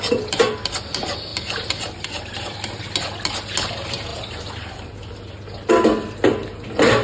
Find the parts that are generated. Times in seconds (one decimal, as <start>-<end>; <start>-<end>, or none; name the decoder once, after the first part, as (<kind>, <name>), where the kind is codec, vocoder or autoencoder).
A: 4.1-4.9 (vocoder, BigVGAN v2)